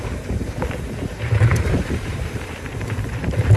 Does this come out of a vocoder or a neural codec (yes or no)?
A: yes